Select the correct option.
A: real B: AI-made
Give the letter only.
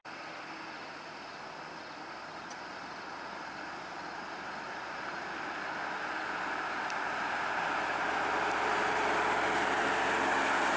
A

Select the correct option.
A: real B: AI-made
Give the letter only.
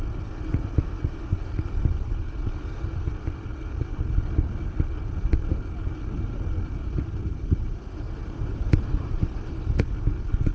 A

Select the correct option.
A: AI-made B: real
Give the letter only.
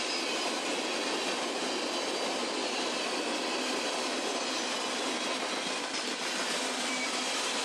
B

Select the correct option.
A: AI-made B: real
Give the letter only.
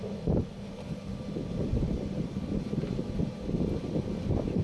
B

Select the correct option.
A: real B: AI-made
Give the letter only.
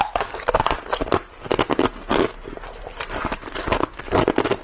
A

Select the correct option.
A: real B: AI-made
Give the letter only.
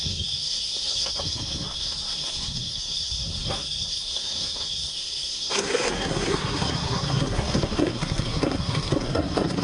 B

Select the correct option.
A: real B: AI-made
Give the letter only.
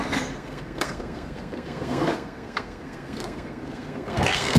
B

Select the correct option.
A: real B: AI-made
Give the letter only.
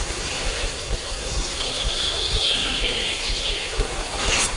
B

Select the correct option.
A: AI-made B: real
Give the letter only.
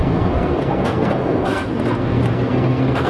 A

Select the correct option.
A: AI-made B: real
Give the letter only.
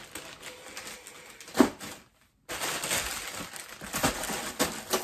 B